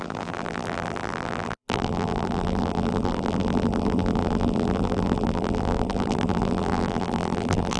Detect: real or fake fake